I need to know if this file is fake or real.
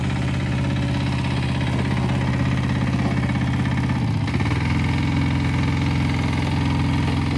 real